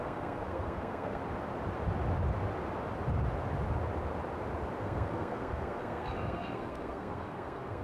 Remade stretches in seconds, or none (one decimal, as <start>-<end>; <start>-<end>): 0.0-1.2; 4.8-7.8